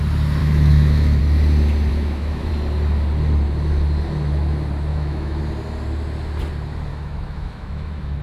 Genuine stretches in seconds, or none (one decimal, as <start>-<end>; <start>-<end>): 0.0-0.4; 1.2-1.9; 2.5-4.9; 5.4-6.9